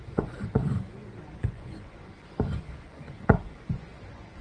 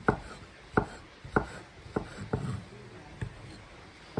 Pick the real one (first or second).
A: second